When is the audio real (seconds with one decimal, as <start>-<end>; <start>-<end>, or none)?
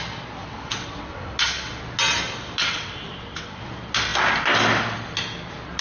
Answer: 0.0-0.4; 1.3-2.6; 3.6-5.8